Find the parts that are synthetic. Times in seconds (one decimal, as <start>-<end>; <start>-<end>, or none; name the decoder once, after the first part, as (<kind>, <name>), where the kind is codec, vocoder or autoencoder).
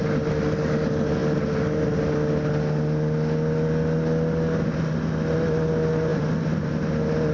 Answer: 6.1-6.7 (vocoder, BigVGAN v2)